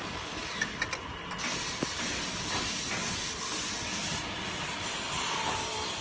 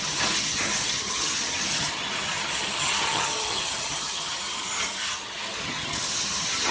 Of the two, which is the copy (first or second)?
second